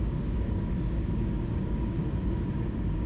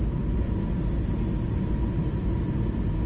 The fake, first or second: first